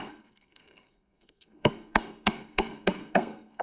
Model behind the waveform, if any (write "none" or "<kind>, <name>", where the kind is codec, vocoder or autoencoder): codec, SNAC